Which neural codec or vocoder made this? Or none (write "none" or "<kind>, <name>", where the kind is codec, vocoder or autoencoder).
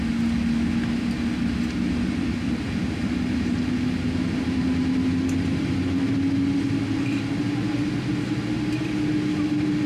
none